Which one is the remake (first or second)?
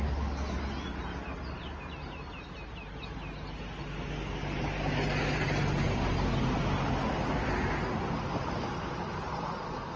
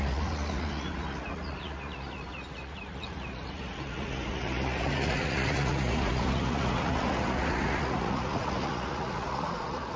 second